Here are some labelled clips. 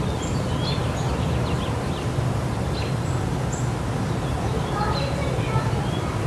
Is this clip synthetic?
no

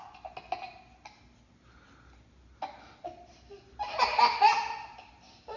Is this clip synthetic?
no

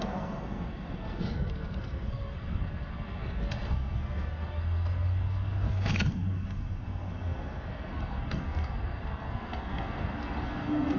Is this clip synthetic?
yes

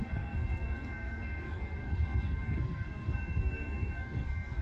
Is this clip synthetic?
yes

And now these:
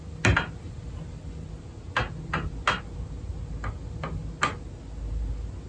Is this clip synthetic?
no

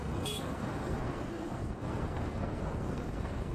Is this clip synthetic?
yes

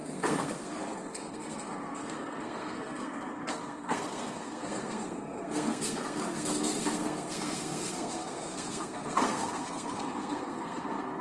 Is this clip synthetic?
yes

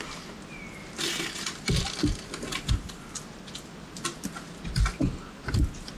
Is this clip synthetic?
no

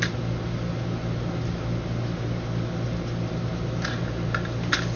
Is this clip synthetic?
no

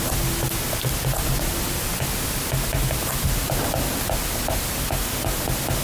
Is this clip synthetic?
no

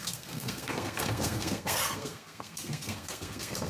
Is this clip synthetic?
yes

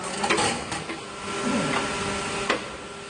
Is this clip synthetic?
no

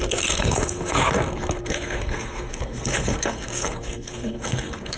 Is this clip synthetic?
yes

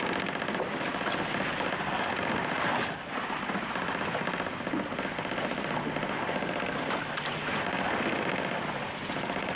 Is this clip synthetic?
no